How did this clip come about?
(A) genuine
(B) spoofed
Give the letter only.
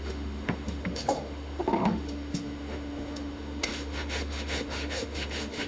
B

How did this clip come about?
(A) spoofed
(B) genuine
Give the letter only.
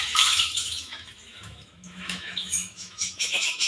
A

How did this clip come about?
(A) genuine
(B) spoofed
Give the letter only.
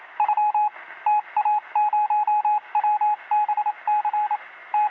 A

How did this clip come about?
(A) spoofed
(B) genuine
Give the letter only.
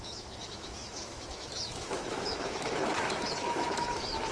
A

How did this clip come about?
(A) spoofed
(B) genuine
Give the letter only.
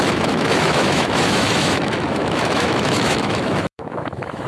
A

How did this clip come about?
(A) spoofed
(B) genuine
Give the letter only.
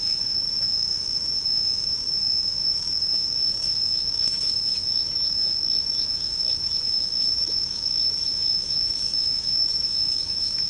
A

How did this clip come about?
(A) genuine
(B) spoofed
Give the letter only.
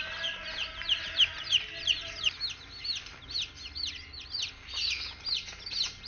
A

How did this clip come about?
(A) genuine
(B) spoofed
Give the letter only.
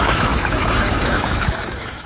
B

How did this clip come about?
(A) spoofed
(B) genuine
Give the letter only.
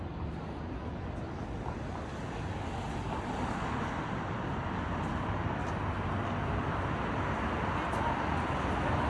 B